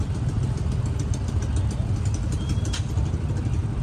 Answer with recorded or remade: recorded